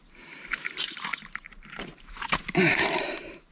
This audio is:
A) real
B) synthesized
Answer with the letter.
B